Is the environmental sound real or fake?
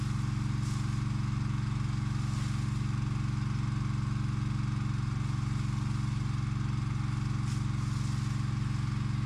real